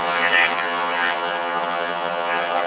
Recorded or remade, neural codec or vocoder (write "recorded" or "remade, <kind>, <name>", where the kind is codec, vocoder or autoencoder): remade, vocoder, HiFi-GAN